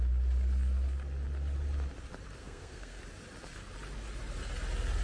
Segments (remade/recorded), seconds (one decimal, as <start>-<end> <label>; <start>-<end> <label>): 0.0-2.4 recorded; 2.4-3.0 remade; 3.0-5.0 recorded

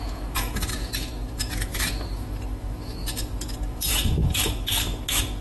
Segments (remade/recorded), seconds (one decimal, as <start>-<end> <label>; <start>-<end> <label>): 0.0-5.4 remade

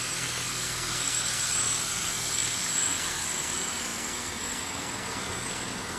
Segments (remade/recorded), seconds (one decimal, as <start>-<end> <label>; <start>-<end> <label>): 0.0-6.0 remade

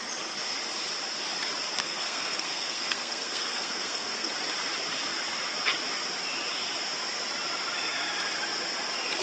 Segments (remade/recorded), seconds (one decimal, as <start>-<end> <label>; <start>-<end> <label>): 0.0-1.8 recorded; 1.8-4.3 remade; 4.3-9.2 recorded

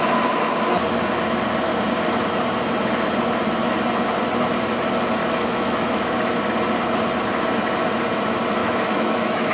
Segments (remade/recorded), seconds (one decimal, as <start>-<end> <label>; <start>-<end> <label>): 0.0-5.2 recorded; 5.2-6.4 remade; 6.4-8.6 recorded; 8.6-9.5 remade